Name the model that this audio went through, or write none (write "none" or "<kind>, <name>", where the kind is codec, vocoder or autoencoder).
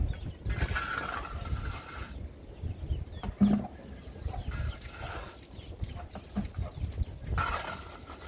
none